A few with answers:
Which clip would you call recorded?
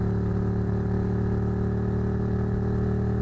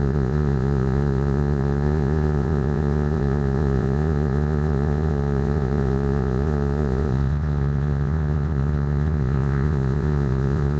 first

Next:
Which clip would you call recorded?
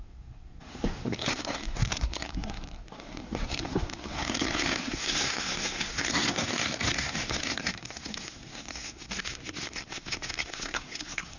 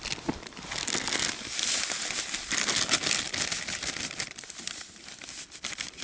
second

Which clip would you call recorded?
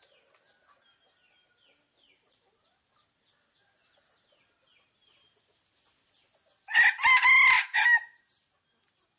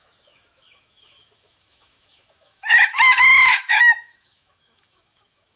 first